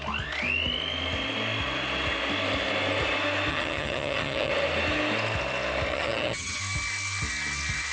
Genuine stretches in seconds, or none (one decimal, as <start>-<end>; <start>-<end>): 0.0-3.5; 4.5-5.9; 6.6-7.9